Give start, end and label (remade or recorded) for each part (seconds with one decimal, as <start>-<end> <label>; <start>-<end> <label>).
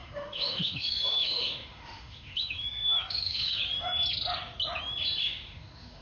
0.0-3.6 remade; 3.6-5.2 recorded; 5.2-6.0 remade